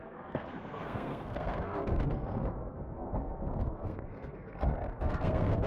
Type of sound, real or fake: fake